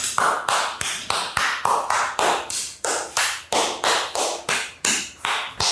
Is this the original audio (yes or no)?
yes